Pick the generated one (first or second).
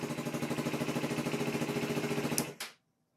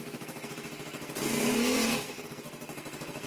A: second